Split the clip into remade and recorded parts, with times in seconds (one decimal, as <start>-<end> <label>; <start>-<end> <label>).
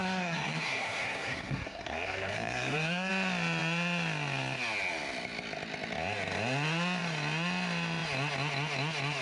0.0-3.1 remade; 3.1-9.2 recorded